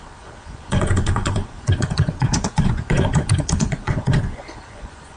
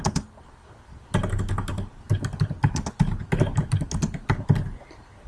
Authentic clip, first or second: second